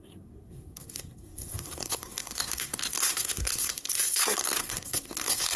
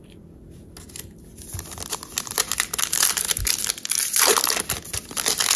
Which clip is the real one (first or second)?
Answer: second